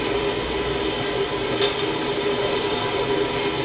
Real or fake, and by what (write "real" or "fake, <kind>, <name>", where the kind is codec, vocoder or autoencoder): real